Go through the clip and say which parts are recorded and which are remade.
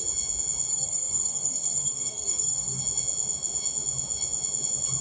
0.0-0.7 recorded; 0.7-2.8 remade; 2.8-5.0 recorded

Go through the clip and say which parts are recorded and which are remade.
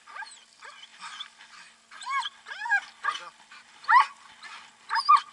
0.0-5.3 recorded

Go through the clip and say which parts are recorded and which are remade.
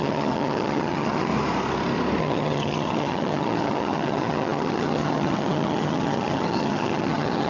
0.0-1.3 remade; 1.3-2.2 recorded; 2.2-7.5 remade